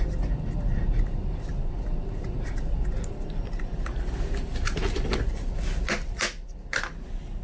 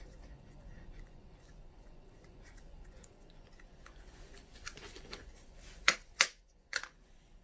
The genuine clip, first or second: first